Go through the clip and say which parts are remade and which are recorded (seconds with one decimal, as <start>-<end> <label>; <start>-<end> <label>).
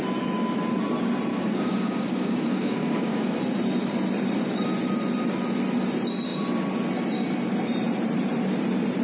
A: 0.0-1.3 recorded; 1.3-3.4 remade; 3.4-9.0 recorded